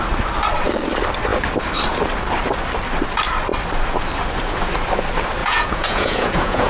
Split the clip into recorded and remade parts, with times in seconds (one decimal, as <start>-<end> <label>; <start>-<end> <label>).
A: 0.0-5.4 recorded; 5.4-6.7 remade